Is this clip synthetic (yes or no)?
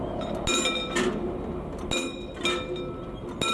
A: no